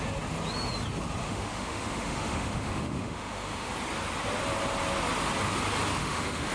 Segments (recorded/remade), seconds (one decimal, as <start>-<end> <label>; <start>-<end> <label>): 0.0-1.2 recorded; 1.2-3.7 remade; 3.7-6.0 recorded; 6.0-6.5 remade